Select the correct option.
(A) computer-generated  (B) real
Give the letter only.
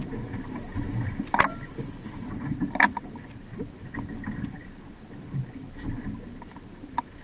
B